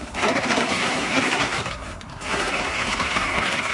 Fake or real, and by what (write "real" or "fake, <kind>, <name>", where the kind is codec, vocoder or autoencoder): fake, codec, SNAC